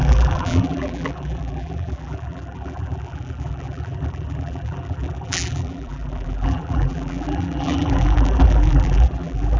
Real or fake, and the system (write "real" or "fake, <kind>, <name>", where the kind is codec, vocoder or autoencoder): fake, vocoder, BigVGAN v2